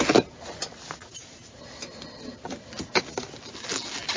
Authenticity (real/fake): real